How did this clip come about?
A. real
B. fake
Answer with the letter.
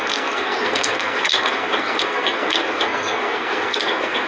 B